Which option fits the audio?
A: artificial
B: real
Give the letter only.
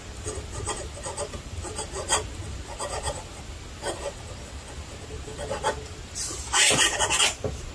B